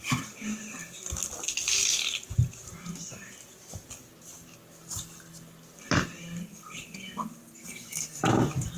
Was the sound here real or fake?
real